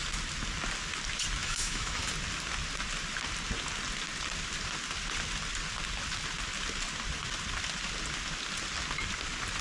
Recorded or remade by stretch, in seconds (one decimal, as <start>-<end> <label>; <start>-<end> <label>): 0.0-1.4 recorded; 1.4-2.1 remade; 2.1-9.6 recorded